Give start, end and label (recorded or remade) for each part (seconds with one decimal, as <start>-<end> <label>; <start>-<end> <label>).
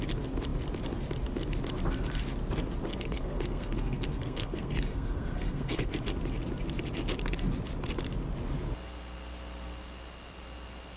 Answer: 0.0-2.9 recorded; 2.9-5.9 remade; 5.9-11.0 recorded